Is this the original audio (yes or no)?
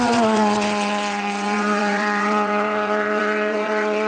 no